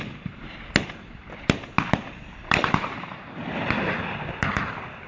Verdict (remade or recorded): recorded